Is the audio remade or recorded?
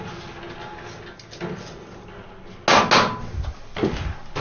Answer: recorded